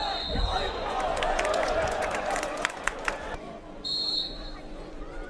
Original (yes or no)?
no